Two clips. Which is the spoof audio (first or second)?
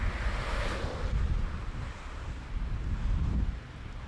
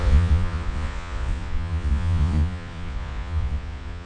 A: second